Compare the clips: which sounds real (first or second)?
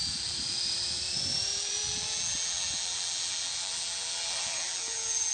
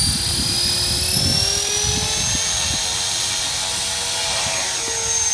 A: second